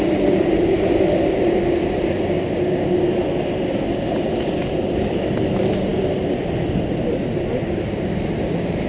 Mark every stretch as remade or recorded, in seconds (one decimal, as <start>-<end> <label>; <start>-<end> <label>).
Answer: 0.0-8.9 recorded